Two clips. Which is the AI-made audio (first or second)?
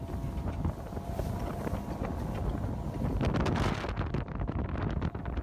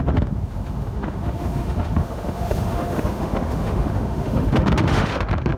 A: second